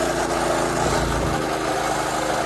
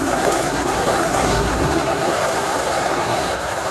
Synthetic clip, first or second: second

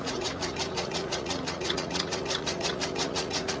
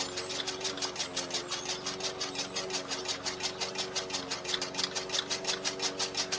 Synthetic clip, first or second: first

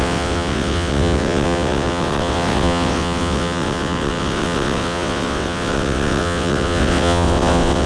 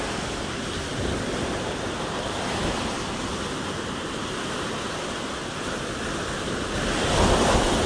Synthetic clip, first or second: first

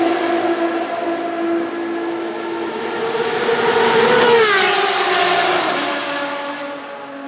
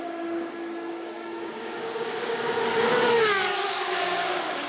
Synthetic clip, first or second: second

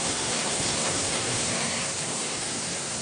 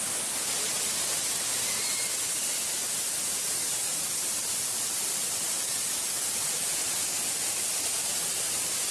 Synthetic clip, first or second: first